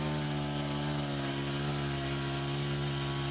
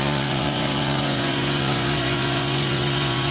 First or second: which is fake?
second